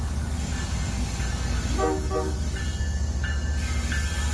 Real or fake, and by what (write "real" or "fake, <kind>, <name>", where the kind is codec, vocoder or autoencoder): real